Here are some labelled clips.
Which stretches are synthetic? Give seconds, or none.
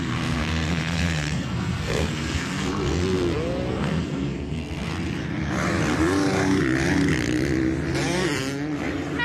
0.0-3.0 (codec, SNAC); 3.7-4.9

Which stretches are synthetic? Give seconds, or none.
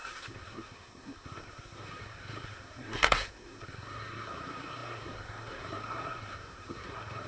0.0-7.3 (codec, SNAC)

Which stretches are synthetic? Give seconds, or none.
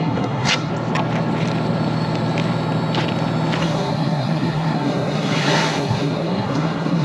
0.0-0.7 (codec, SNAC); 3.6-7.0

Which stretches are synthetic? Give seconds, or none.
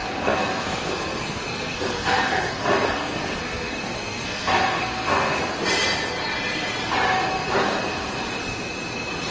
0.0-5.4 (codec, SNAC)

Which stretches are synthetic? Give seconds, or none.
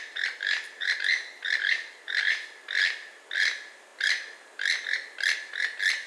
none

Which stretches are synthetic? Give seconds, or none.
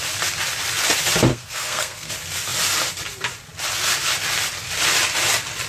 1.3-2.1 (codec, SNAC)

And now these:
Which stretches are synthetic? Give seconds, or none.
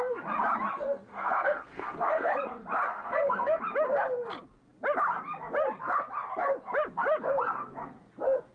1.1-2.3 (codec, SNAC); 2.9-3.6